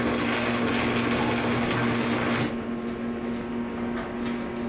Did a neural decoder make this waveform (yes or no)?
no